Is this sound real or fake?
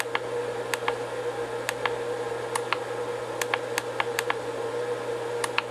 real